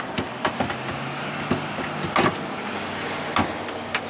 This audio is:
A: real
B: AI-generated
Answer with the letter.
A